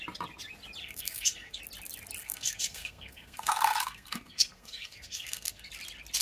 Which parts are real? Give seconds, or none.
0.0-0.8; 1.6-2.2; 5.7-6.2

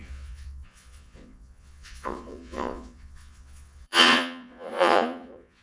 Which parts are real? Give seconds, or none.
none

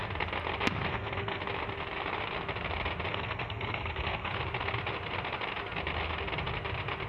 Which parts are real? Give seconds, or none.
0.0-0.9; 1.4-3.1; 4.3-7.1

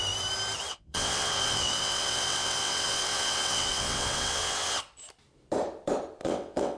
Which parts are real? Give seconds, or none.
0.0-0.7; 4.8-6.2

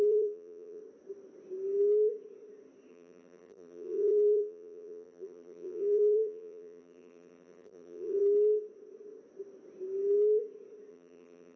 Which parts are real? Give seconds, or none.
0.8-2.9; 8.2-10.9

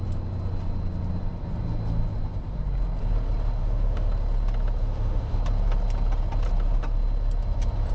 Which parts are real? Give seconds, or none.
0.0-3.6; 4.1-4.8; 5.4-7.9

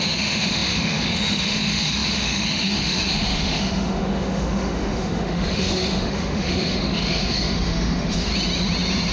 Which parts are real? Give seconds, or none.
8.3-9.1

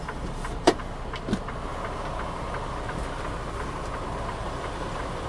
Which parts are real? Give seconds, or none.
0.8-4.4